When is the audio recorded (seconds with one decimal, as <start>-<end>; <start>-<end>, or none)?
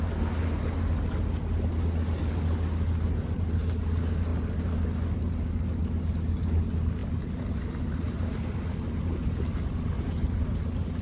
0.0-11.0